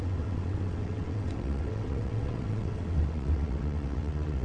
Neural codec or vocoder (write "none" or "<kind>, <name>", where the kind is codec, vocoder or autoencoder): vocoder, WaveNeXt